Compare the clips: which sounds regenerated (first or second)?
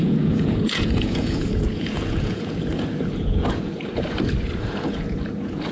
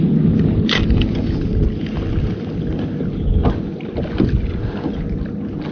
first